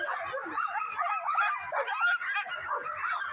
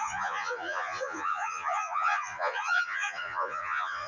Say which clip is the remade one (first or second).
second